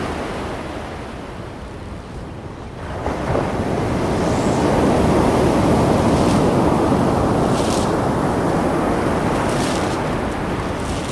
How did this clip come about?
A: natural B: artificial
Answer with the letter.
A